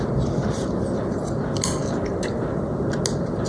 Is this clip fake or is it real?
real